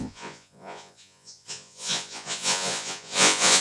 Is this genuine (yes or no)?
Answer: no